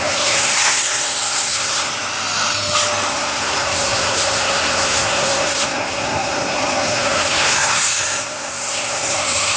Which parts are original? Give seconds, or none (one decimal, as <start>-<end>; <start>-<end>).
1.9-3.1